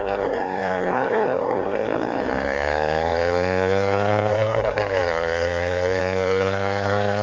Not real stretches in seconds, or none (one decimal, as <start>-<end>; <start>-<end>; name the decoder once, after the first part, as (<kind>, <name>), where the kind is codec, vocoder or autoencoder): 0.0-7.2 (codec, SNAC)